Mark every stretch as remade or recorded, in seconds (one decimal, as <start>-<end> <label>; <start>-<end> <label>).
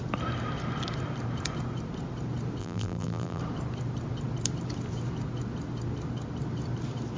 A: 0.0-2.6 recorded; 2.6-3.4 remade; 3.4-7.2 recorded